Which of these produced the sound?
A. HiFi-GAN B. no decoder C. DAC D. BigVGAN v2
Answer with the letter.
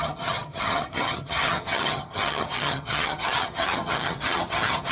A